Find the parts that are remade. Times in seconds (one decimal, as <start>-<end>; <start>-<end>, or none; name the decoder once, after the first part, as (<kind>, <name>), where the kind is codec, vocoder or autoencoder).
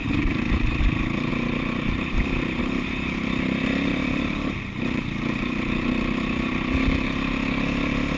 0.0-0.8 (vocoder, BigVGAN v2); 1.3-2.6; 3.9-5.0